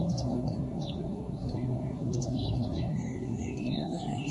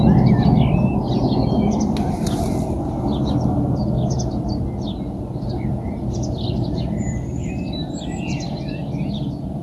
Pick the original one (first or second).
second